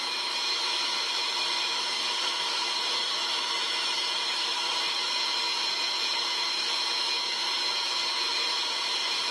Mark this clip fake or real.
fake